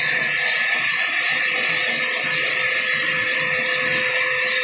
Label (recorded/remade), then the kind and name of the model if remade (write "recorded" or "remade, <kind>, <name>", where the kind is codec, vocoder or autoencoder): recorded